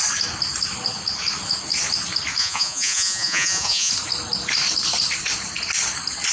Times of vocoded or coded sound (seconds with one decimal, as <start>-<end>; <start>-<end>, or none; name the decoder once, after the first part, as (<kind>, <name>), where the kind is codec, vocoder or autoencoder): 2.4-3.9 (vocoder, Vocos)